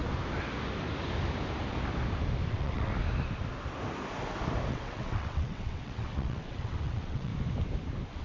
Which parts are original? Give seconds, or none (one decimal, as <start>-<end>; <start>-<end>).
0.0-2.5; 2.9-4.7; 7.3-8.2